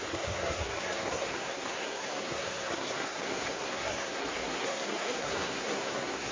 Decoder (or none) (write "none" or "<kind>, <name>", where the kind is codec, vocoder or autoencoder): codec, SNAC